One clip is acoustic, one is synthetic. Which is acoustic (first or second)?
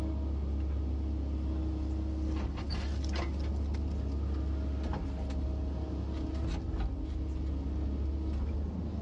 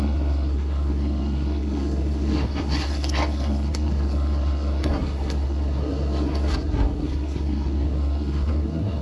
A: first